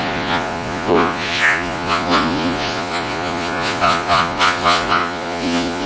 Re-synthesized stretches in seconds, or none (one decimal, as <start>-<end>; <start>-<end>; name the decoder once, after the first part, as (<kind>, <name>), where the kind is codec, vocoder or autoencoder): 0.0-5.9 (vocoder, Vocos)

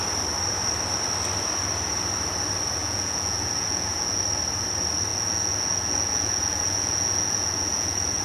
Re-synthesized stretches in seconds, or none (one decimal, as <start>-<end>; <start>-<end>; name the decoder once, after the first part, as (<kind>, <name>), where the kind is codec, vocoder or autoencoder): 2.8-4.2 (vocoder, Vocos); 5.1-8.2

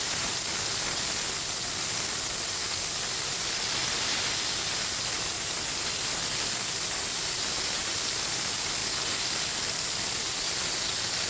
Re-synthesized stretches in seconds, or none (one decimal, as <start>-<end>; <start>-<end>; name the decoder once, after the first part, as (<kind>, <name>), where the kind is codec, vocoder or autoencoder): none